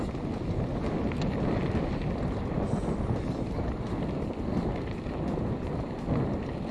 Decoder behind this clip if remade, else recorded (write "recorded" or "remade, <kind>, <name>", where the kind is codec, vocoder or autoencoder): recorded